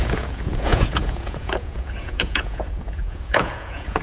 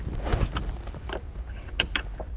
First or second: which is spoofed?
first